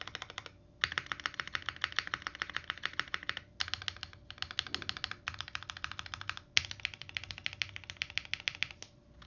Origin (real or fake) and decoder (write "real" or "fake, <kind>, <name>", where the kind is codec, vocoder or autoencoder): real